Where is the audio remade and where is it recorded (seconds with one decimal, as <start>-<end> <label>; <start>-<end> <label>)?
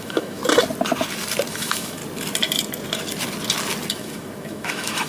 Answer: 0.0-0.4 remade; 0.4-1.5 recorded; 1.5-2.0 remade; 2.0-3.9 recorded; 3.9-5.1 remade